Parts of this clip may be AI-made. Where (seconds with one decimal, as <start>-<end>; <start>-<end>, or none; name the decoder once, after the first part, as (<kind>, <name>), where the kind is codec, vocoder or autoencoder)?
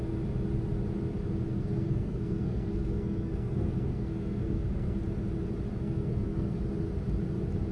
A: 1.5-5.0 (codec, SNAC); 5.7-6.6